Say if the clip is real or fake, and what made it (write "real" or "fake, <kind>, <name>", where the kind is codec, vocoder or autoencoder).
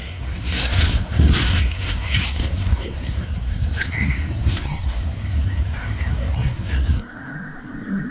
fake, codec, SNAC